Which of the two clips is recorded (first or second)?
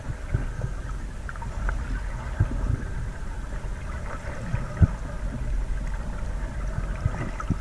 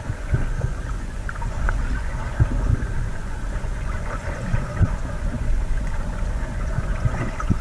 first